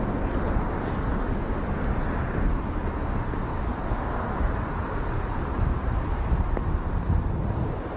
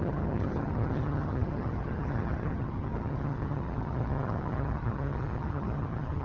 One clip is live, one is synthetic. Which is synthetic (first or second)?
second